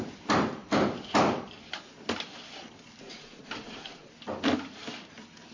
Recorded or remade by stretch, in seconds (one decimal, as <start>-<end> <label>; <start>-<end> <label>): 0.0-3.0 recorded; 3.0-4.1 remade; 4.1-5.5 recorded

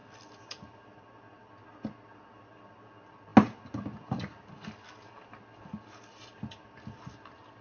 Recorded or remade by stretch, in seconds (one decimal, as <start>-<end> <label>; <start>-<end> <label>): 0.0-7.6 recorded

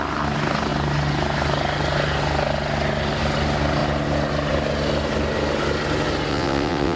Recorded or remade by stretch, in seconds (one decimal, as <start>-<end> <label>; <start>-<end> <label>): 0.0-6.3 recorded; 6.3-7.0 remade

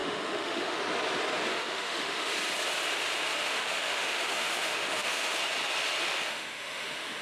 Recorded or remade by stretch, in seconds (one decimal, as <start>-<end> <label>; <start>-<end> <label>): 0.0-0.8 remade; 0.8-1.5 recorded; 1.5-2.3 remade; 2.3-3.3 recorded; 3.3-5.3 remade; 5.3-6.3 recorded; 6.3-7.2 remade